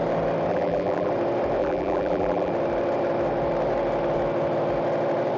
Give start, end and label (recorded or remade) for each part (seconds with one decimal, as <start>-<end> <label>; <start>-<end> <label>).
0.0-0.5 recorded; 0.5-1.1 remade; 1.1-1.6 recorded; 1.6-2.5 remade; 2.5-5.4 recorded